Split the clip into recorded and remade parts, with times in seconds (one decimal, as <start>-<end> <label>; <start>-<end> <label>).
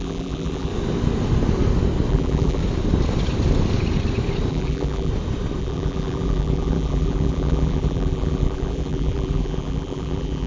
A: 0.0-0.7 remade; 0.7-2.1 recorded; 2.1-2.6 remade; 2.6-4.5 recorded; 4.5-5.1 remade; 5.1-5.6 recorded; 5.6-10.5 remade